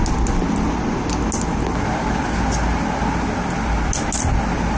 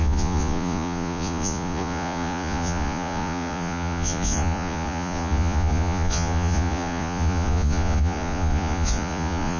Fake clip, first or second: second